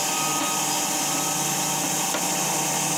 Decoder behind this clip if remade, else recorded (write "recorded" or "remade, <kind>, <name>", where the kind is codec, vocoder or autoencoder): recorded